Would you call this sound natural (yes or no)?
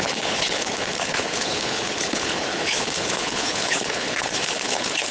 no